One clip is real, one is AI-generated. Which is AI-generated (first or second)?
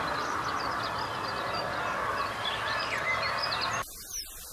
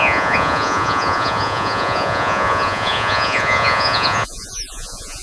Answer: second